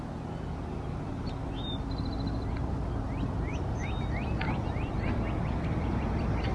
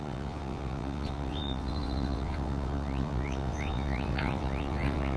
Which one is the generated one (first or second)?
second